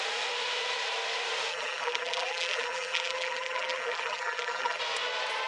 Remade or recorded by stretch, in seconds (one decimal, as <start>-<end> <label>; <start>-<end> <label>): 0.0-1.5 recorded; 1.5-4.8 remade; 4.8-5.5 recorded